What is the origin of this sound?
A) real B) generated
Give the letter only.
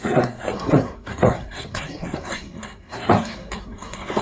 B